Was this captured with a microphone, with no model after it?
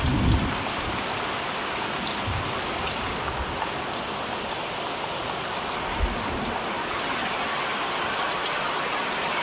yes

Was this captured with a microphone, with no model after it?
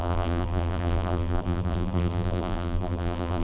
no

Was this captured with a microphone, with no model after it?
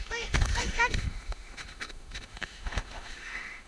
no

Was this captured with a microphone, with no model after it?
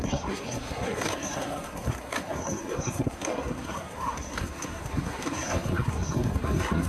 no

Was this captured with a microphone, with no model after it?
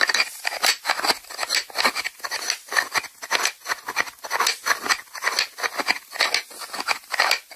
yes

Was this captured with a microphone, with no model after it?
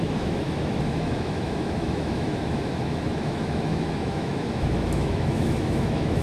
no